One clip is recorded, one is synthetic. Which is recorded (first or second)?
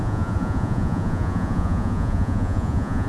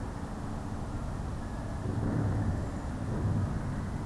second